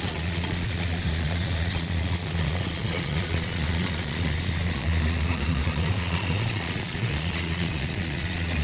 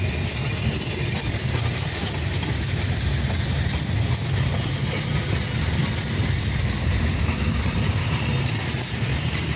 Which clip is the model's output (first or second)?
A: first